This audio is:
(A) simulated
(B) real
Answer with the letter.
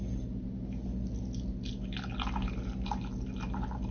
B